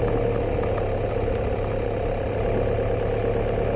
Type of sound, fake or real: real